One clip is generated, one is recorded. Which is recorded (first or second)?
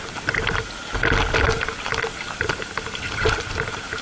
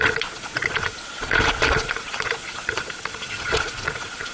first